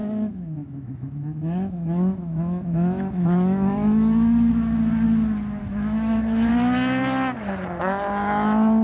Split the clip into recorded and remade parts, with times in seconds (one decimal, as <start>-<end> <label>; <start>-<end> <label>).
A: 0.0-4.8 remade; 4.8-5.6 recorded; 5.6-6.5 remade; 6.5-8.8 recorded